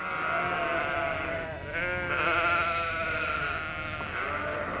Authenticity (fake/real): real